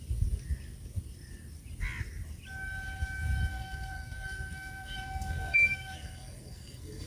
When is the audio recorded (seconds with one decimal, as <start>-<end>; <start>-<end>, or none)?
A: 0.0-3.5